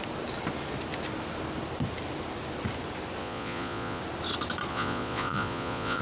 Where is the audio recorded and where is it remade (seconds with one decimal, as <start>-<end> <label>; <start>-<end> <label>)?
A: 0.0-3.2 recorded; 3.2-4.0 remade; 4.0-4.7 recorded; 4.7-6.0 remade